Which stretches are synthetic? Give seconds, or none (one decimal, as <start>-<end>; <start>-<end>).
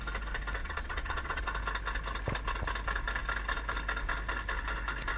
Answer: 0.6-1.4